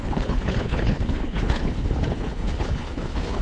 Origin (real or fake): fake